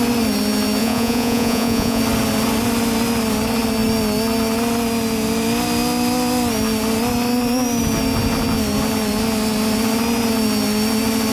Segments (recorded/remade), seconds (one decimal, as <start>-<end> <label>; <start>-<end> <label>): 0.0-0.8 recorded; 0.8-2.0 remade; 2.0-11.3 recorded